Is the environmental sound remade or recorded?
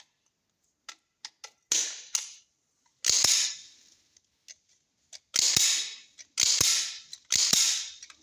recorded